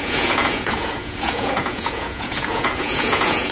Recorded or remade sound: remade